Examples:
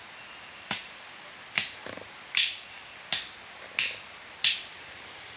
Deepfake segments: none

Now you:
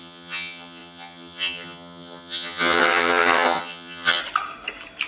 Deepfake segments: 0.0-4.2 (vocoder, HiFi-GAN)